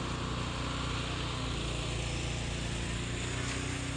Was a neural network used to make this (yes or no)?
no